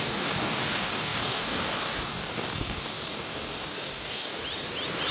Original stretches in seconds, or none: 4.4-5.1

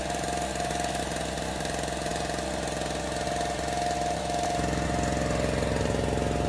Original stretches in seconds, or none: 0.0-6.5

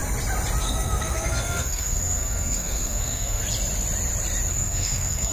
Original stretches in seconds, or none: 0.0-0.6; 3.4-4.5